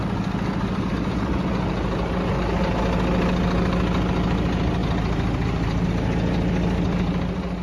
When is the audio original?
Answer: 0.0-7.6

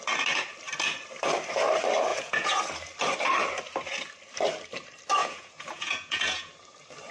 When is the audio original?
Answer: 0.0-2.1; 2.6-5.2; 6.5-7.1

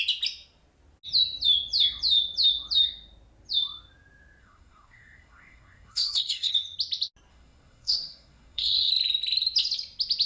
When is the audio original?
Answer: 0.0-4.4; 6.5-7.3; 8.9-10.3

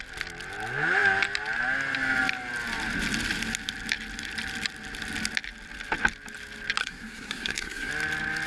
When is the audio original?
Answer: 0.0-6.8; 7.9-8.5

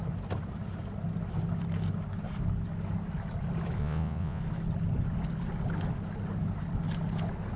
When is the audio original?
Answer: 0.0-3.8; 4.4-7.6